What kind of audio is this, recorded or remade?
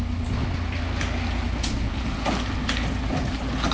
recorded